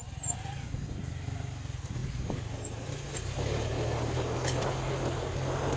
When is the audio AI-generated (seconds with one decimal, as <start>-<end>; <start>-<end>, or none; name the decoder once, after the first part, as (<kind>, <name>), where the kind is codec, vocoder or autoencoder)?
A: none